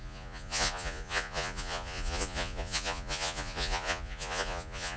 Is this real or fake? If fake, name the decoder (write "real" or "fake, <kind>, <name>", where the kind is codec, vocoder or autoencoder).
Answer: fake, vocoder, Vocos